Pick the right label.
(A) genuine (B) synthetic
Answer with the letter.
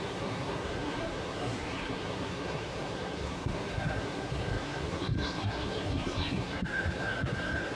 B